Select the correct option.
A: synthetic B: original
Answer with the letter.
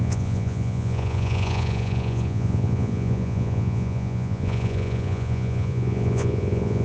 A